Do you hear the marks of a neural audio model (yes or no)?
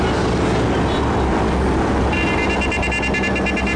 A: no